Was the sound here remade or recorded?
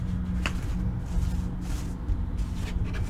recorded